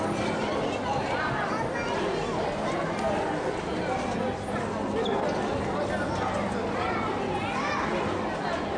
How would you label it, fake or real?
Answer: real